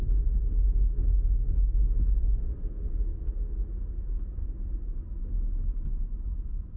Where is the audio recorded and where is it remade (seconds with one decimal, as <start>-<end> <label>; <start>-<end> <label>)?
0.0-6.0 recorded; 6.0-6.8 remade